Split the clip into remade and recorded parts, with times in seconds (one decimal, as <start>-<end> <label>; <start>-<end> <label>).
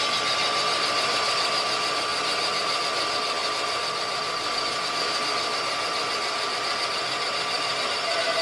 0.0-8.4 recorded